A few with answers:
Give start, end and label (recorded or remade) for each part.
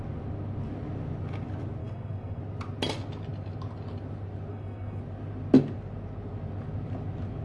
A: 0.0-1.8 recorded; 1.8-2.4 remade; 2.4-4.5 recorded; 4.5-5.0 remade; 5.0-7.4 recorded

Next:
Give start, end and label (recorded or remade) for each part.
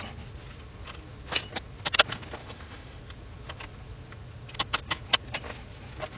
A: 0.0-2.4 recorded; 2.4-3.0 remade; 3.0-6.2 recorded